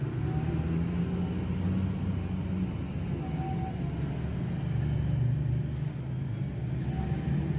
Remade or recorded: recorded